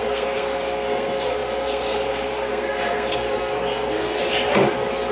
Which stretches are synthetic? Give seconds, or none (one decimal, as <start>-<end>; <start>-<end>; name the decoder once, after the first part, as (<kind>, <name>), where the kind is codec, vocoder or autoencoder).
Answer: 0.0-4.2 (codec, SNAC)